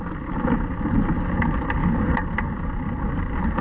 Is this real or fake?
real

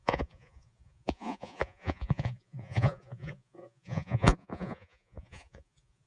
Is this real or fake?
fake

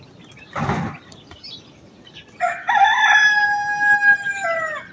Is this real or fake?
real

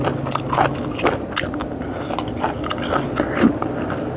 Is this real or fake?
real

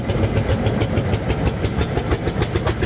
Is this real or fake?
real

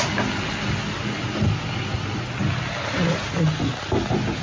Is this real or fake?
real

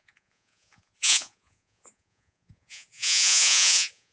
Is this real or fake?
fake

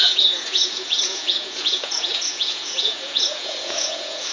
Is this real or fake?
fake